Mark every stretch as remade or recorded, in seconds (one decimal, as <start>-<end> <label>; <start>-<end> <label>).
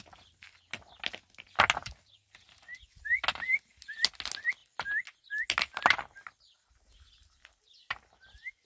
0.0-1.8 recorded; 1.8-2.5 remade; 2.5-8.7 recorded